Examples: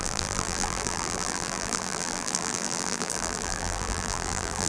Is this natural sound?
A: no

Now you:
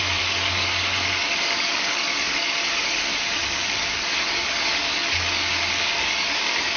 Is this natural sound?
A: no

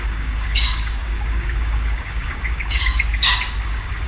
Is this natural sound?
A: no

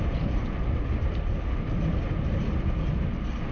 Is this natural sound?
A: yes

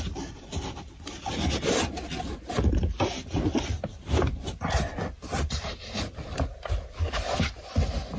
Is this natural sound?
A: yes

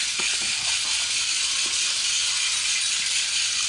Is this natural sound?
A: yes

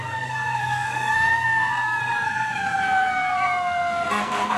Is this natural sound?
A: no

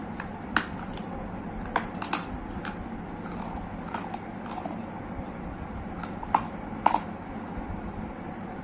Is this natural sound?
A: yes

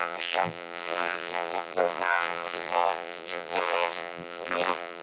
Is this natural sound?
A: no